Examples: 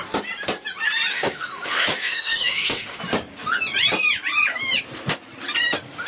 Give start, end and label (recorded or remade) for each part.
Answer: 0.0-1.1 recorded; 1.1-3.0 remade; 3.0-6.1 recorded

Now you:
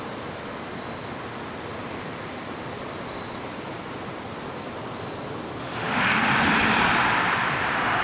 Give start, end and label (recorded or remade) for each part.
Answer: 0.0-5.6 recorded; 5.6-6.3 remade; 6.3-8.0 recorded

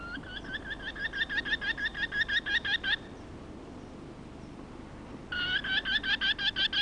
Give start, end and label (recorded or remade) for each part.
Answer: 0.0-0.9 recorded; 0.9-1.5 remade; 1.5-1.9 recorded; 1.9-4.8 remade; 4.8-6.8 recorded